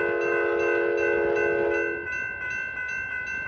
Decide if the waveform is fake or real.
real